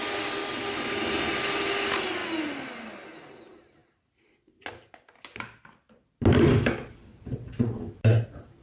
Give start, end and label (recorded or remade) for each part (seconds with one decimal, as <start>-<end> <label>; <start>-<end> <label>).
0.0-7.1 recorded; 7.1-7.8 remade; 7.8-8.6 recorded

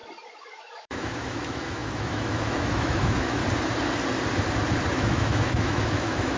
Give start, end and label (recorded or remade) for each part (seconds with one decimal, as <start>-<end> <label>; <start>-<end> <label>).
0.0-0.6 recorded; 0.6-3.4 remade; 3.4-4.9 recorded; 4.9-6.4 remade

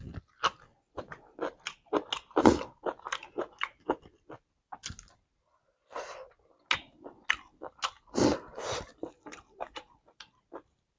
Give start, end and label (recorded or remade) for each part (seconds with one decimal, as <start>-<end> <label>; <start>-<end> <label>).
0.0-8.9 recorded; 8.9-11.0 remade

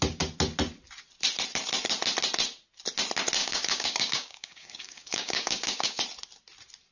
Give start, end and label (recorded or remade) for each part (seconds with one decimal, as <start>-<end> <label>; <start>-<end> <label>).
0.0-3.4 recorded; 3.4-6.0 remade; 6.0-6.9 recorded

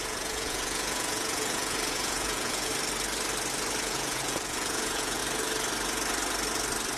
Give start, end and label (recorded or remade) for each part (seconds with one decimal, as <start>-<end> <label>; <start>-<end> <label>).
0.0-2.7 remade; 2.7-3.8 recorded; 3.8-5.2 remade; 5.2-7.0 recorded

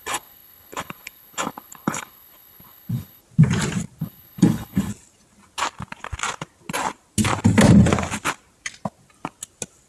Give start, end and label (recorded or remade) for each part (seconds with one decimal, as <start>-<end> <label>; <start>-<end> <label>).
0.0-3.2 remade; 3.2-4.0 recorded; 4.0-4.9 remade; 4.9-9.9 recorded

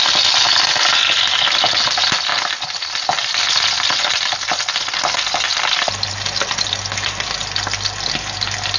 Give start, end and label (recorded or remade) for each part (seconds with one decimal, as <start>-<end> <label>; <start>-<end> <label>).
0.0-8.8 recorded